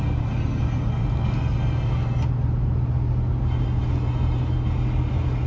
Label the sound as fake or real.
real